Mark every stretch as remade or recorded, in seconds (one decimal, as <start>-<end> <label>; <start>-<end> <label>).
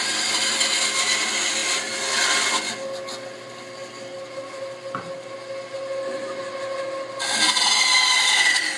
0.0-8.8 recorded